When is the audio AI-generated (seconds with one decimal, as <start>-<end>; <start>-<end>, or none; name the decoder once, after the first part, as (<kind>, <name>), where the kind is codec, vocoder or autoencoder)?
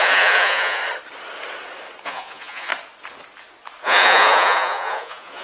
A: 0.0-0.8 (vocoder, Vocos); 2.0-2.7; 3.8-5.4